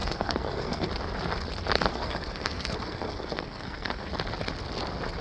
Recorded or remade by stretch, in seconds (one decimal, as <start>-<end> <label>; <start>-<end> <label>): 0.0-0.9 remade; 0.9-1.9 recorded; 1.9-4.1 remade; 4.1-5.2 recorded